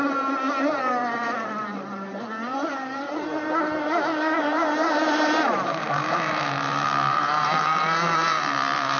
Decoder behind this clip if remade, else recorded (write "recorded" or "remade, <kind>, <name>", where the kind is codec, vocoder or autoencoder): remade, vocoder, BigVGAN v2